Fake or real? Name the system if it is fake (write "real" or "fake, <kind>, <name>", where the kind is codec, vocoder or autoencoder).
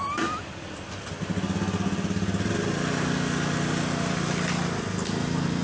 real